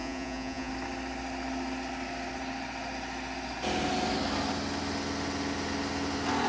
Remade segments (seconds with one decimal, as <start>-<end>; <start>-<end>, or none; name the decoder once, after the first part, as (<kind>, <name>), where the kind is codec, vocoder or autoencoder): 0.0-0.7 (vocoder, Vocos)